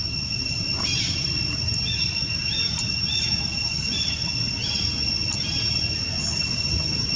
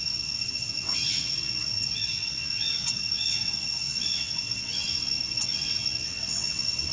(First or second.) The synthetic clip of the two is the second